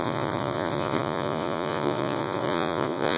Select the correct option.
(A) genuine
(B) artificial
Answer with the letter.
B